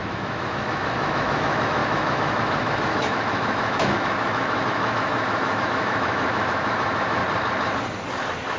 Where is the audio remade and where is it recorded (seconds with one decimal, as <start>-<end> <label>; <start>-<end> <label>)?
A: 0.0-7.2 remade; 7.2-8.6 recorded